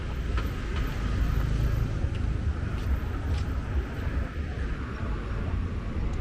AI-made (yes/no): no